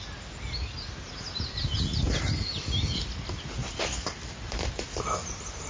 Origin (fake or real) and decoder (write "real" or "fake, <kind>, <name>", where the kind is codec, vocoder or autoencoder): real